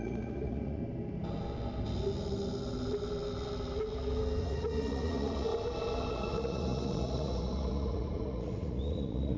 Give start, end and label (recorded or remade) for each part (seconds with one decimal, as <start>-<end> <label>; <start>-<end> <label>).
0.0-0.8 remade; 0.8-4.4 recorded; 4.4-5.5 remade; 5.5-6.1 recorded; 6.1-9.4 remade